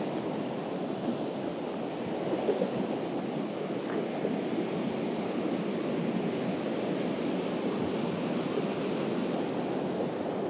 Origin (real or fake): real